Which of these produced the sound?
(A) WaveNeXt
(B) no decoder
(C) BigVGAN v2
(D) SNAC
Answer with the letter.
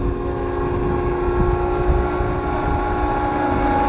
B